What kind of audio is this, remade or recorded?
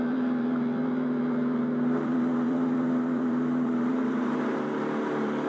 remade